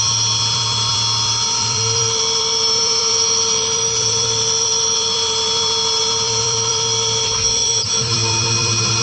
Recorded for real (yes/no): no